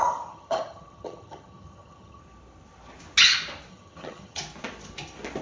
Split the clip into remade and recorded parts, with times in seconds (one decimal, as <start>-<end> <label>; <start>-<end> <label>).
0.0-2.2 remade; 2.2-3.7 recorded; 3.7-4.4 remade; 4.4-5.4 recorded